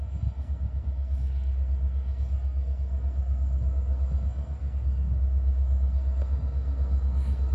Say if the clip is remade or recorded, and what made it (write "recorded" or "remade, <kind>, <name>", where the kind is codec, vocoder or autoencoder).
remade, codec, SNAC